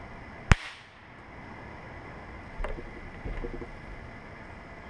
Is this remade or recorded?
recorded